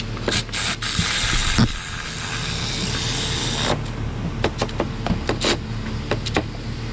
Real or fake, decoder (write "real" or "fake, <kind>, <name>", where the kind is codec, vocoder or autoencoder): real